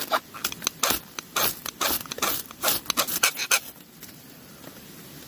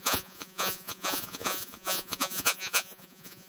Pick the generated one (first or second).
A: second